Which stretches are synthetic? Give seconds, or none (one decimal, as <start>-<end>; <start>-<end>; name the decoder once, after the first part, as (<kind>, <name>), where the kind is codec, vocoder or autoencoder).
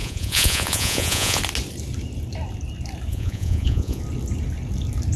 0.0-1.4 (vocoder, Vocos); 3.1-4.0